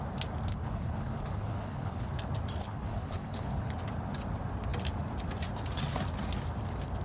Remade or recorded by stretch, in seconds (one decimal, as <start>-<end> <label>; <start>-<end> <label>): 0.0-0.5 recorded; 0.5-2.1 remade; 2.1-2.6 recorded; 2.6-3.7 remade; 3.7-7.0 recorded